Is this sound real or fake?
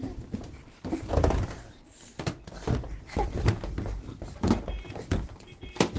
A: fake